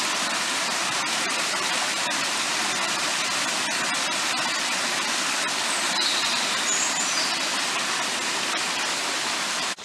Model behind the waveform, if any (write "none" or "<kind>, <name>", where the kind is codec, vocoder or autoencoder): none